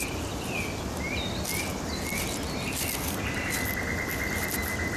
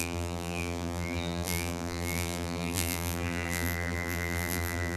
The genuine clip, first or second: first